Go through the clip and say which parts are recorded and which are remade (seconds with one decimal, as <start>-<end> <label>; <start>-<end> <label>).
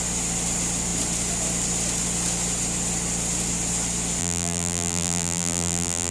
0.0-4.2 recorded; 4.2-6.1 remade